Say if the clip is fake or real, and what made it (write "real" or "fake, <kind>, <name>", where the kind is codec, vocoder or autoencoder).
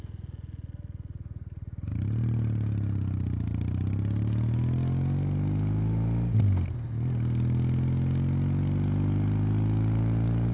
real